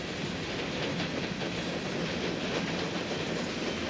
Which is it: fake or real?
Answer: real